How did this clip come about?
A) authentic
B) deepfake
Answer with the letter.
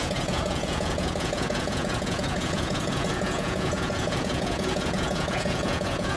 B